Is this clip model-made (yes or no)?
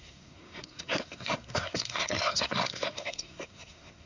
yes